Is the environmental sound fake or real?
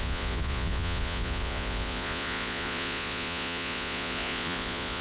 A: fake